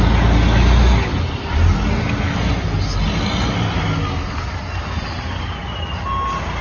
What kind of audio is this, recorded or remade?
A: recorded